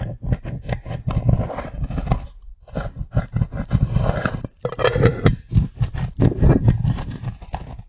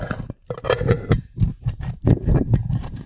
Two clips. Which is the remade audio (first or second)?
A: second